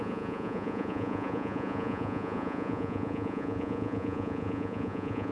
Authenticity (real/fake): fake